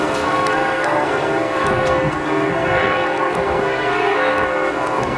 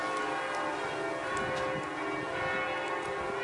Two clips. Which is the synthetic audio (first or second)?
first